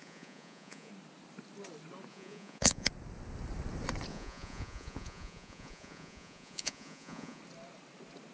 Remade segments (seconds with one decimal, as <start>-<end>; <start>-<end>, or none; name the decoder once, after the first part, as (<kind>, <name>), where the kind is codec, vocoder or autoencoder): 0.0-0.9 (vocoder, Vocos); 2.1-2.9; 4.1-7.4

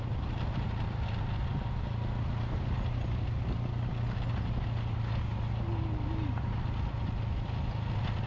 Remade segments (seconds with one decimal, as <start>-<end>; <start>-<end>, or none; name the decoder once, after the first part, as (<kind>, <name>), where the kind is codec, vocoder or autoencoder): none

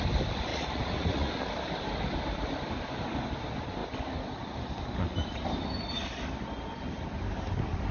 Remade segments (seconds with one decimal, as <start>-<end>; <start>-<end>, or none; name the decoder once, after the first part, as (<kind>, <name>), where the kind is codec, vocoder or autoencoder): 0.5-1.3 (vocoder, Vocos)

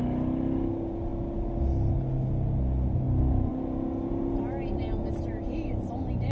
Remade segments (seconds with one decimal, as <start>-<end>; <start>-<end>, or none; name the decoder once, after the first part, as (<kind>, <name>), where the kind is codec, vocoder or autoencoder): none

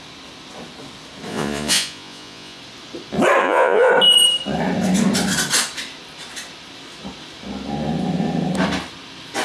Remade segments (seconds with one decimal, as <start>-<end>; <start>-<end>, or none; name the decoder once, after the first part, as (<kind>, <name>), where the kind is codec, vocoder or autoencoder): 1.3-2.6 (vocoder, Vocos); 3.4-3.9

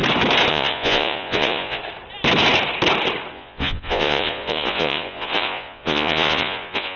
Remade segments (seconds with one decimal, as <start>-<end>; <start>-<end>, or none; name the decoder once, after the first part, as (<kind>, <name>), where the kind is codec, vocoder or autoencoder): 0.5-1.8 (vocoder, Vocos); 3.3-7.0

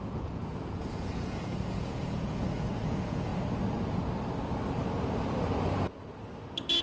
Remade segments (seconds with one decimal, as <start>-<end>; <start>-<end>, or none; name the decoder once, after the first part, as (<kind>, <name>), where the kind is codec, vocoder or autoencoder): 0.0-3.3 (vocoder, Vocos)